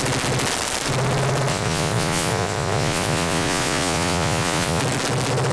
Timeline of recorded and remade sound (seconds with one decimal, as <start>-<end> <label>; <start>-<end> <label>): 0.0-1.5 recorded; 1.5-4.8 remade; 4.8-5.5 recorded